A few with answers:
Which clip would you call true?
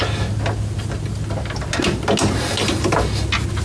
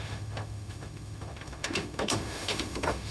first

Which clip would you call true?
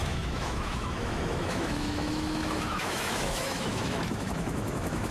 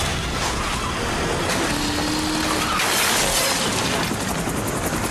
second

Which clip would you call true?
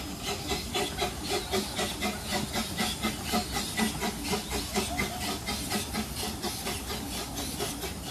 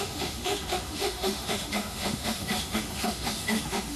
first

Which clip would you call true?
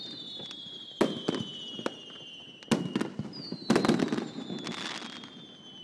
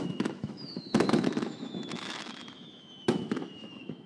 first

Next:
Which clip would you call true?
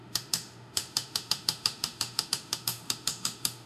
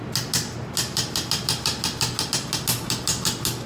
second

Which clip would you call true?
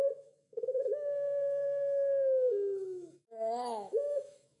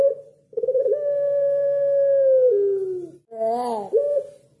second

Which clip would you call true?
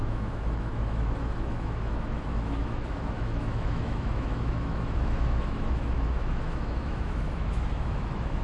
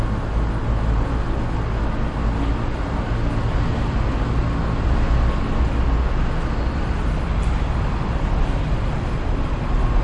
second